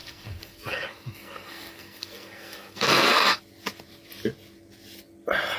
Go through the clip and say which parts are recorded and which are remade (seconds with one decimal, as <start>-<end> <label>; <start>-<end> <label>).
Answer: 0.0-3.4 remade; 3.4-5.6 recorded